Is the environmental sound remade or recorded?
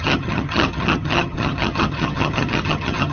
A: remade